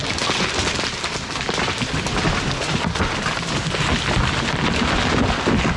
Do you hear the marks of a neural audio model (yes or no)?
no